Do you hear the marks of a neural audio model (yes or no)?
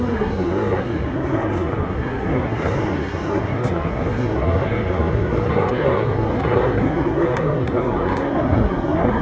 yes